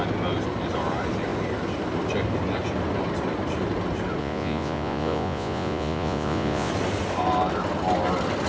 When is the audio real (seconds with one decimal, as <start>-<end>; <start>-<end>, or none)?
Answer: 0.0-4.2; 6.7-8.5